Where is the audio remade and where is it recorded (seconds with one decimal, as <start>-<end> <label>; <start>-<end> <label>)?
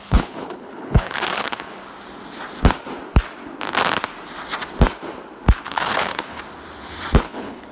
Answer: 0.0-1.8 remade; 1.8-5.6 recorded; 5.6-6.4 remade; 6.4-7.2 recorded; 7.2-7.7 remade